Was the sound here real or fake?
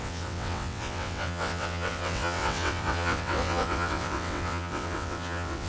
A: fake